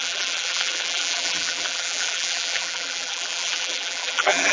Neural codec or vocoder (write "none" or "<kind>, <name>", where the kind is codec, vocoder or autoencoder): vocoder, BigVGAN v2